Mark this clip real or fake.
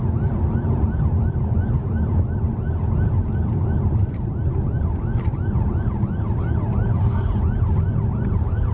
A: real